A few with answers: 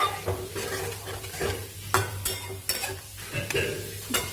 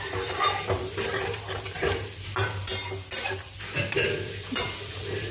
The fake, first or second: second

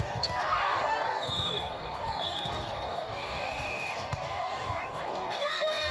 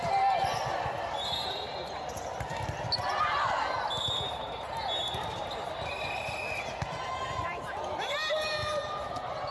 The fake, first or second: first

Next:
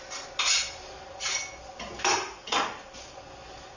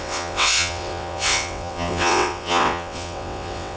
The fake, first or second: second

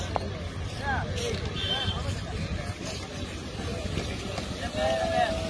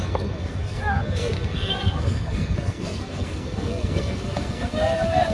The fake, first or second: second